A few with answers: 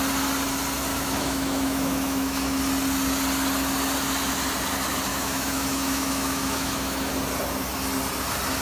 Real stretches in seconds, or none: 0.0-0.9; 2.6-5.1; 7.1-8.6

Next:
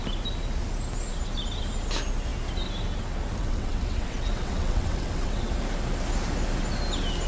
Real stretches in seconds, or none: 0.0-3.4; 5.5-7.3

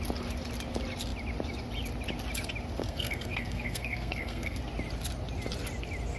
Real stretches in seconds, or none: 0.0-2.8; 4.6-6.2

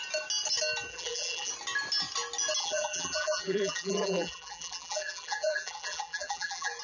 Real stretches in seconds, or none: 0.0-0.9; 1.5-2.6

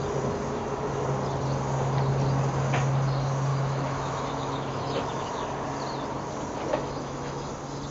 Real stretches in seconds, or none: 0.0-3.5; 5.3-6.7; 7.5-7.9

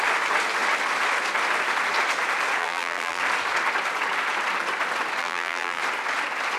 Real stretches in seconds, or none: 0.0-2.6; 3.2-5.2; 5.8-6.6

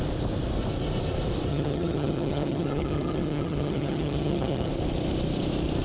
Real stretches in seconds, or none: 0.0-1.5; 4.7-5.8